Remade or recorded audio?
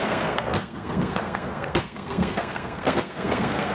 remade